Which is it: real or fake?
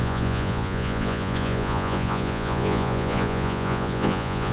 fake